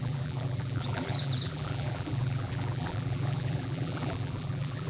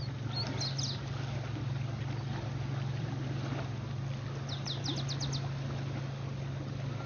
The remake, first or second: first